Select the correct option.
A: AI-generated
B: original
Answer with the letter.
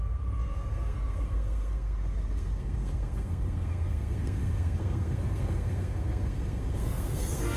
A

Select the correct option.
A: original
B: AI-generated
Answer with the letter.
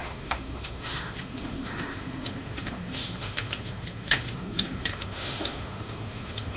B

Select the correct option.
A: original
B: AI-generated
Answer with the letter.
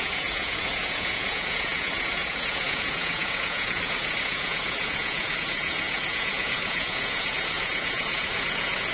B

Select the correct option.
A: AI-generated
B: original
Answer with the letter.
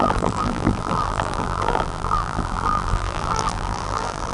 A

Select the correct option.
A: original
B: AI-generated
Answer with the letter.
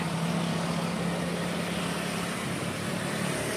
A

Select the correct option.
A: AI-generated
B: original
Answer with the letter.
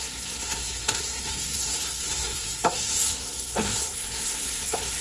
A